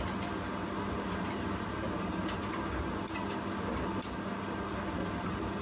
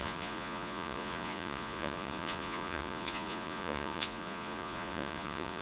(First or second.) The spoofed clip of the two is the second